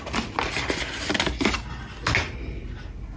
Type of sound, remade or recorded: recorded